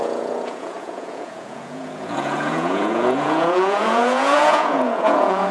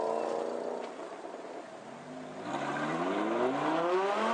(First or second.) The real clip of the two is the second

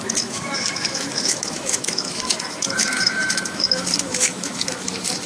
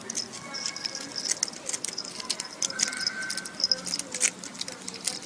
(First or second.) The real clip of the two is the second